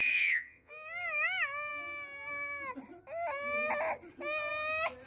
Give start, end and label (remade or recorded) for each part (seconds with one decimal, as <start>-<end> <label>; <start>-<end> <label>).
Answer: 0.0-0.7 remade; 0.7-5.1 recorded